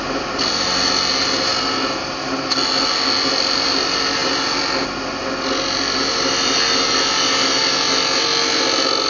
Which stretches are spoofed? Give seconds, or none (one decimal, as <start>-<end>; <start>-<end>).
none